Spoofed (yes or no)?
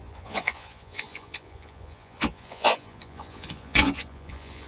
yes